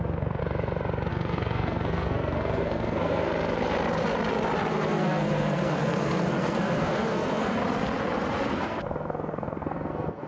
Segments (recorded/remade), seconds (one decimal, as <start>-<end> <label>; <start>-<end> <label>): 0.0-0.4 remade; 0.4-1.1 recorded; 1.1-3.3 remade; 3.3-4.7 recorded; 4.7-7.6 remade; 7.6-8.6 recorded; 8.6-10.3 remade